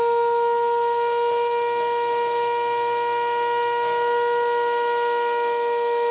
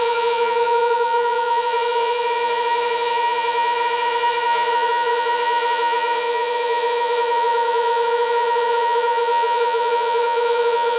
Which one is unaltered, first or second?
first